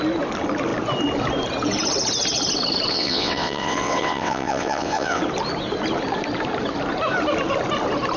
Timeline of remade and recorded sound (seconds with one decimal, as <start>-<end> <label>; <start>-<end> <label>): 0.0-2.9 recorded; 2.9-5.2 remade; 5.2-8.2 recorded